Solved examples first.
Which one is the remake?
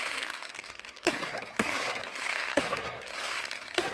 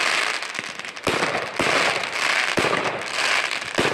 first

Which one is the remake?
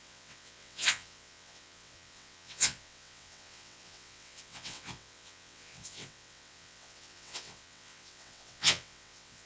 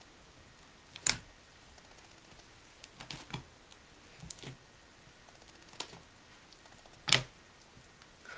first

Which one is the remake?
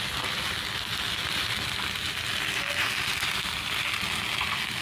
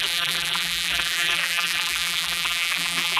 second